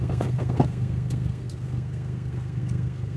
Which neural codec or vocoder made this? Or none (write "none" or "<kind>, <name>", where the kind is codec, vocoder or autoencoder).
codec, SNAC